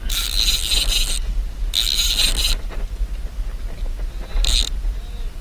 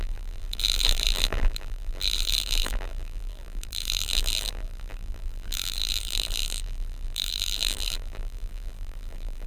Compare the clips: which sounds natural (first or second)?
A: first